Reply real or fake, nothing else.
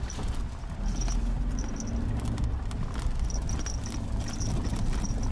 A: real